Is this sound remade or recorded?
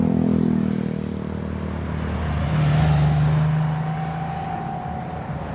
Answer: recorded